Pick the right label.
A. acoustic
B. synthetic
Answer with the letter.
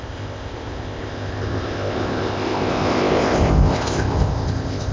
B